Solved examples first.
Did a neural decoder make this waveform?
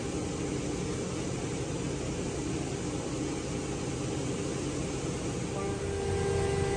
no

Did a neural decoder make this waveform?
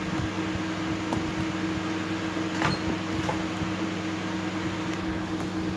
no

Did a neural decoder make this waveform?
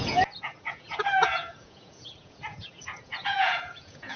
yes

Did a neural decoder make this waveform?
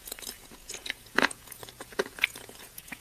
yes